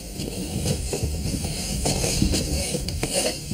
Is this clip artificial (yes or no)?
yes